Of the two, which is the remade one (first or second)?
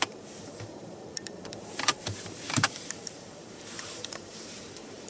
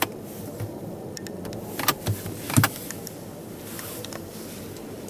first